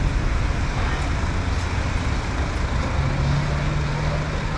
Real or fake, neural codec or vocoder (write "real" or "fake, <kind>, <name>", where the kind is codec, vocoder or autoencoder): real